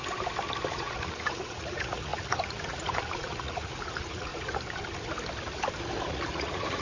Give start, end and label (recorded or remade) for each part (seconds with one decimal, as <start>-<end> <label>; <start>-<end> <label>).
0.0-0.7 recorded; 0.7-4.3 remade; 4.3-6.1 recorded; 6.1-6.8 remade

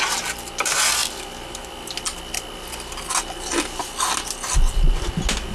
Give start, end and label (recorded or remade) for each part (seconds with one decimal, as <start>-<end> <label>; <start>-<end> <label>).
0.0-5.5 recorded

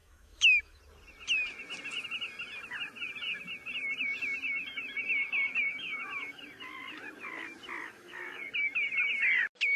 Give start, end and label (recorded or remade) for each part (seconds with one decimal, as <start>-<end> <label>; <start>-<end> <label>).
0.0-0.8 remade; 0.8-5.6 recorded; 5.6-6.4 remade; 6.4-7.8 recorded; 7.8-8.4 remade; 8.4-9.8 recorded

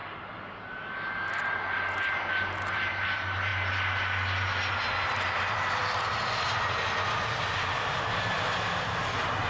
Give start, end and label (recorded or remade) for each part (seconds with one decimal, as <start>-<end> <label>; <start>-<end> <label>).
0.0-9.5 recorded

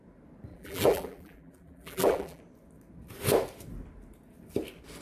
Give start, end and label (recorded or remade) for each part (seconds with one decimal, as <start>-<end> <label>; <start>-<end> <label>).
0.0-0.5 recorded; 0.5-2.4 remade; 2.4-5.0 recorded

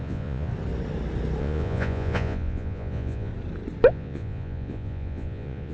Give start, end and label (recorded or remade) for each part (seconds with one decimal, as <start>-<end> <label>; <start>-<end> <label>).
0.0-0.5 remade; 0.5-1.4 recorded; 1.4-3.3 remade; 3.3-3.9 recorded; 3.9-5.7 remade